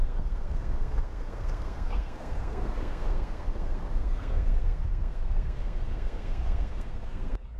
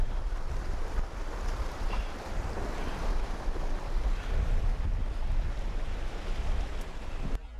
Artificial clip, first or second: first